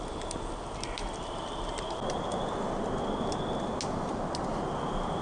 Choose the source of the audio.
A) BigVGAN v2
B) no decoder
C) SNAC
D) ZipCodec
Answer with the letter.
B